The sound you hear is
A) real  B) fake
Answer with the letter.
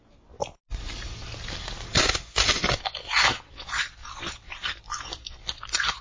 B